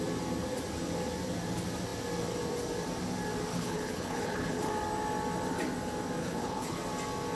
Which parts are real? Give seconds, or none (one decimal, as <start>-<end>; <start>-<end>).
0.0-3.5; 4.7-6.2; 6.8-7.3